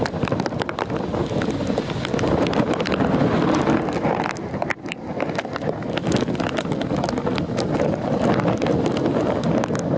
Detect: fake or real real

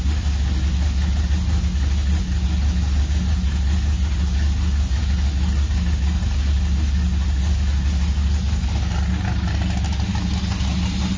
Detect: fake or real real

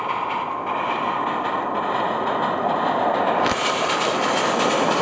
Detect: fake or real real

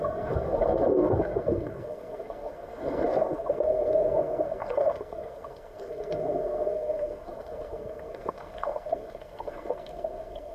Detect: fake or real fake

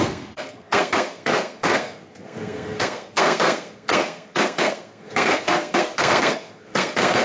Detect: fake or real fake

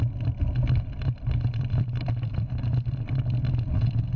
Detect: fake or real real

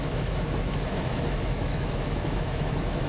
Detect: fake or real fake